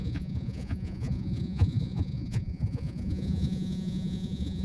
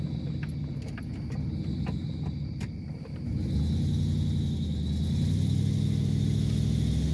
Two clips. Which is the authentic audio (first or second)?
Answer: second